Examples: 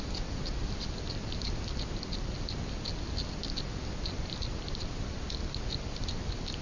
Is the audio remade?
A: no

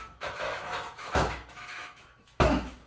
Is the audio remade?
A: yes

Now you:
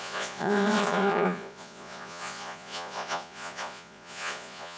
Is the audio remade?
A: yes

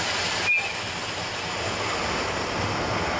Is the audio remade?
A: no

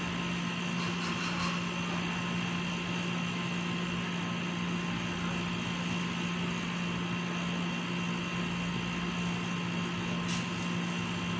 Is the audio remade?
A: no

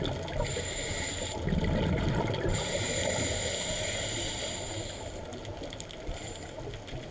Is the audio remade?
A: no